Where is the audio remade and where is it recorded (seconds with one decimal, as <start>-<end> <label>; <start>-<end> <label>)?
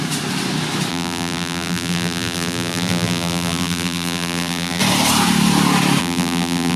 0.0-0.9 recorded; 0.9-4.8 remade; 4.8-6.0 recorded; 6.0-6.8 remade